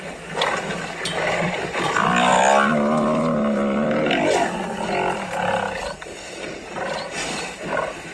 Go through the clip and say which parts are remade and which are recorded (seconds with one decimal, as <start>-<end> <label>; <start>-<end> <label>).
0.0-8.1 recorded